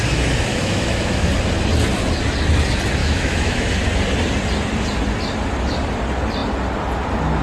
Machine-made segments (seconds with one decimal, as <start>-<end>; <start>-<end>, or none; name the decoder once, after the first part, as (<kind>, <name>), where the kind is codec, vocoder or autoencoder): 0.5-1.3 (autoencoder, DAC-VAE); 3.0-3.7